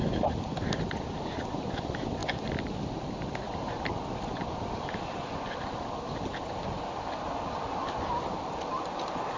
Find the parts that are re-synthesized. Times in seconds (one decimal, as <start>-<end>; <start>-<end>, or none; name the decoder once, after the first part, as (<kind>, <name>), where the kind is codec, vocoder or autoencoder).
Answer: none